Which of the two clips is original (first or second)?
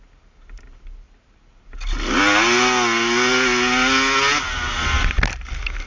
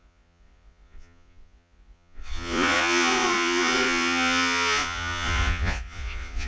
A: first